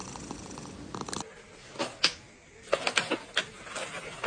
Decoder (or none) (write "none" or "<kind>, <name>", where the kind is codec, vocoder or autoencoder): none